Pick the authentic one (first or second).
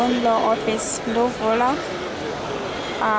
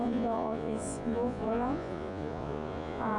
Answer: first